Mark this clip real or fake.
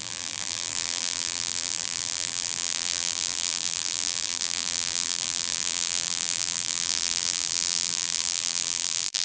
fake